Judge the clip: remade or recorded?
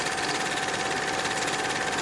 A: recorded